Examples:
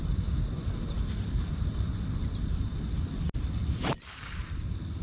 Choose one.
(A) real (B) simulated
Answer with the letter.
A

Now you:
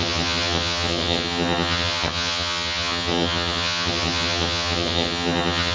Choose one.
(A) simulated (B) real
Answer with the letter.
A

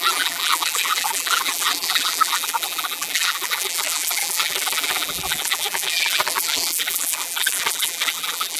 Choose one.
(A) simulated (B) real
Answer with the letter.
A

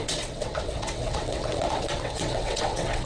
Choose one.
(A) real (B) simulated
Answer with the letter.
B